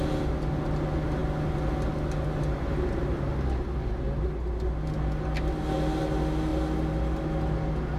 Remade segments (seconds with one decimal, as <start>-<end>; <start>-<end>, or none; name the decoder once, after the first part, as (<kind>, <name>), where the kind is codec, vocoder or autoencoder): none